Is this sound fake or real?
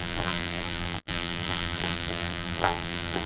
fake